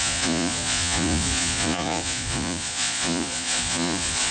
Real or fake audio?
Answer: fake